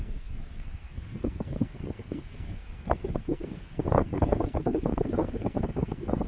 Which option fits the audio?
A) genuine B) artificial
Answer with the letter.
B